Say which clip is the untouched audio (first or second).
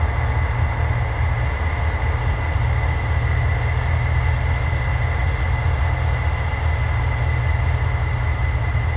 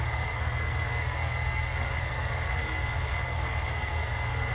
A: first